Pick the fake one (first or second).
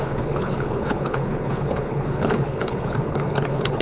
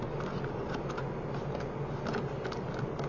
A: first